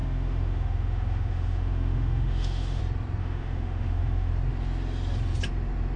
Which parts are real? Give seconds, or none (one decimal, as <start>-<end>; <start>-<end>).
2.8-3.2; 4.3-6.0